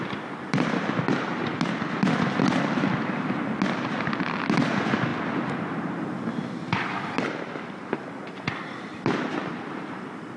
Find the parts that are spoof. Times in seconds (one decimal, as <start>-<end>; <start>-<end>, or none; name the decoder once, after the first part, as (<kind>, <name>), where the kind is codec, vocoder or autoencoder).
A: none